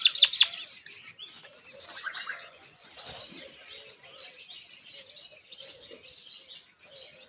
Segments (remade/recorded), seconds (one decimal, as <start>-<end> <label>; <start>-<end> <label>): 0.0-2.3 recorded; 2.3-2.9 remade; 2.9-7.3 recorded